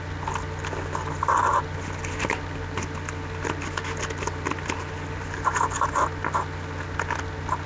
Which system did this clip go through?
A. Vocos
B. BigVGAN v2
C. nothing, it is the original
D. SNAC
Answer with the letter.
C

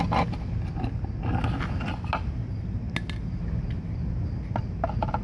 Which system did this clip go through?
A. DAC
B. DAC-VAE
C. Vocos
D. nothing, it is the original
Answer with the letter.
D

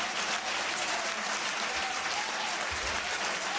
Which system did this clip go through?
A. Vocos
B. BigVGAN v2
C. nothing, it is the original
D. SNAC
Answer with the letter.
C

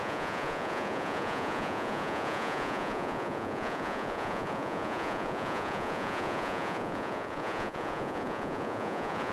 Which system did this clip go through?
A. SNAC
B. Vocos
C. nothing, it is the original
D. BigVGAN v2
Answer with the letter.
B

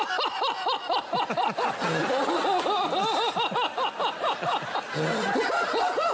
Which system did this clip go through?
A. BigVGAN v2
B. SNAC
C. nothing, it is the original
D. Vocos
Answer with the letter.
C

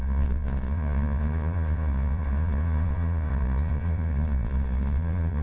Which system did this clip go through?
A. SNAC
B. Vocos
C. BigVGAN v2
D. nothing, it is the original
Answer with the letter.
B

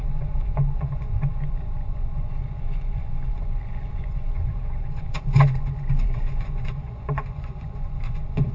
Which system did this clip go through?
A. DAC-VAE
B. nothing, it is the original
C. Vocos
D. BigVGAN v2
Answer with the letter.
C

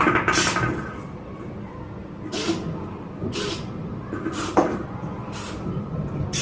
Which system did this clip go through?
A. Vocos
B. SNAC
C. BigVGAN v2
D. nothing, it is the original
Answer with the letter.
D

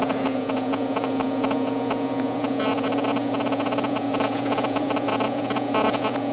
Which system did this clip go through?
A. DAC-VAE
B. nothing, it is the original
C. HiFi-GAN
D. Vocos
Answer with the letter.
D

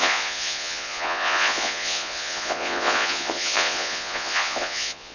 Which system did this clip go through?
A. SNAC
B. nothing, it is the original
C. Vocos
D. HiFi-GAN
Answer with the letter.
C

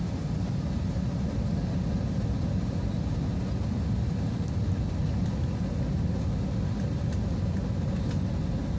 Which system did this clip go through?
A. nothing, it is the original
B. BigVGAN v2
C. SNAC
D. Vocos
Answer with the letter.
A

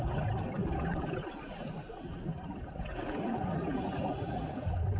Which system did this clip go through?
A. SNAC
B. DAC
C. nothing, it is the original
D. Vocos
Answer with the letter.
C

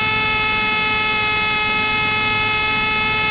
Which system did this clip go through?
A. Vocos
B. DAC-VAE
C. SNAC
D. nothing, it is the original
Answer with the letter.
D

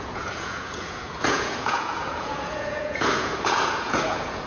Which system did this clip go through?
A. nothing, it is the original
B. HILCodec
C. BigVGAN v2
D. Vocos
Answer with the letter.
D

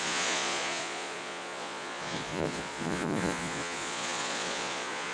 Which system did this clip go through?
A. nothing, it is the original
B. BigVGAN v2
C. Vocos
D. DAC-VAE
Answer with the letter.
C